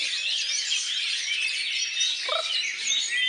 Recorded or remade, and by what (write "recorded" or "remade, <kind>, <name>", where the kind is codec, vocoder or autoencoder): recorded